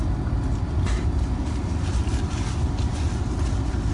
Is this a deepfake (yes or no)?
no